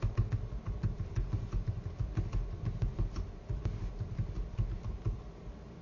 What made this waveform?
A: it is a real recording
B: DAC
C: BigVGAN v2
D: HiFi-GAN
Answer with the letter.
A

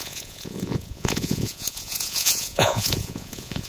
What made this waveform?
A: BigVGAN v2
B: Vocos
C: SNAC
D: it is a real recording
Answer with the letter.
B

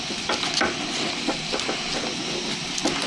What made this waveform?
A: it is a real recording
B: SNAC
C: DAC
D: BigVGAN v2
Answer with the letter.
A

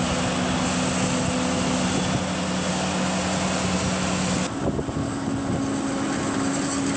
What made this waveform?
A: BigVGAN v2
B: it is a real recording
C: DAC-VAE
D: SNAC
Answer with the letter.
B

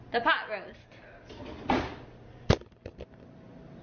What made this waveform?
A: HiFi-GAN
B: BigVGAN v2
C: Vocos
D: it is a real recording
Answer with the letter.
D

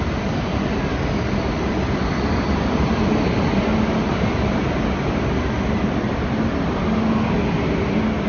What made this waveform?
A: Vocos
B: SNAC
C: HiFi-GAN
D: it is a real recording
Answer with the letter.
D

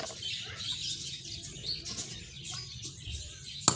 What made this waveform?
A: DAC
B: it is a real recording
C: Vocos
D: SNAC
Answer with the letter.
B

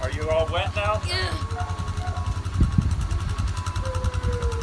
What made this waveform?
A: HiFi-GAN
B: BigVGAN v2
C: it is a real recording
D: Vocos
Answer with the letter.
C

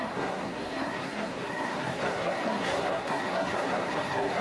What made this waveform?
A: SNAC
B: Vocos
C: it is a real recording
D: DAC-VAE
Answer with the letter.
A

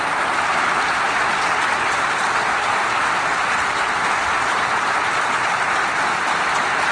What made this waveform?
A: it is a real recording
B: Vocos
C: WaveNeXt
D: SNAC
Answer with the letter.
A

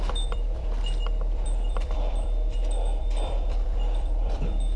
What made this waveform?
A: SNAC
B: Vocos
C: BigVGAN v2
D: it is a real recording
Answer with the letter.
C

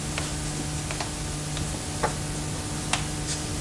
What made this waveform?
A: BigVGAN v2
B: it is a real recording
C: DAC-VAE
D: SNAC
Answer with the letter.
B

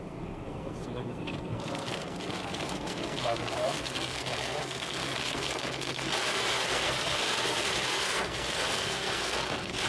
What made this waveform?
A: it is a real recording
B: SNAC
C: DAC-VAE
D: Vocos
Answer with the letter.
B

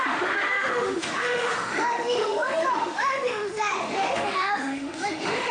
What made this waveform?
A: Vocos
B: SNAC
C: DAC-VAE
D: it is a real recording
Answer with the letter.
C